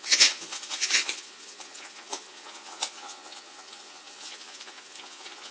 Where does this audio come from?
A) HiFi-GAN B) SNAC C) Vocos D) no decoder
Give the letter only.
C